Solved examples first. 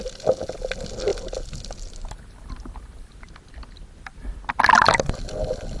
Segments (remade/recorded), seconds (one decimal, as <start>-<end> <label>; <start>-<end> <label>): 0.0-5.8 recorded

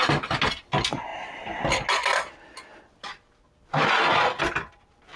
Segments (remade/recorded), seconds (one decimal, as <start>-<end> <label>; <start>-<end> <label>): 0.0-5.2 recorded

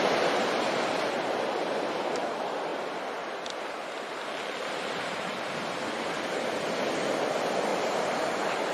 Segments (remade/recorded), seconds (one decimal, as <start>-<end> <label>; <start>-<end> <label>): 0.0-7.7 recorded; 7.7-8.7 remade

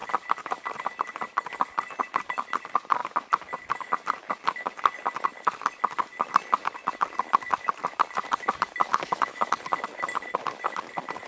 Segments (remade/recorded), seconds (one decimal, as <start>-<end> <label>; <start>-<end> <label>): 0.0-8.9 recorded; 8.9-9.5 remade; 9.5-11.3 recorded

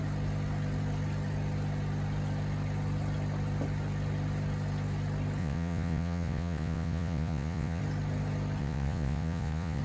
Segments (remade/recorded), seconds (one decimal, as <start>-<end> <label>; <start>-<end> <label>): 0.0-5.4 recorded; 5.4-7.8 remade; 7.8-8.6 recorded; 8.6-9.8 remade

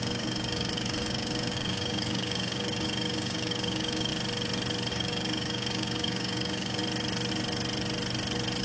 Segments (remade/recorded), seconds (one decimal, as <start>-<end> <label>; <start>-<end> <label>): 0.0-4.1 remade; 4.1-4.9 recorded; 4.9-6.8 remade; 6.8-8.6 recorded

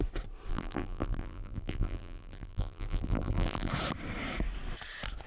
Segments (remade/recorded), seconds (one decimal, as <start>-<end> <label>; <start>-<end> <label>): 0.0-0.5 recorded; 0.5-3.7 remade; 3.7-5.3 recorded

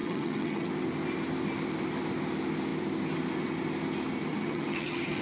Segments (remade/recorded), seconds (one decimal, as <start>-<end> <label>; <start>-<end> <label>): 0.0-0.7 remade; 0.7-4.3 recorded; 4.3-5.2 remade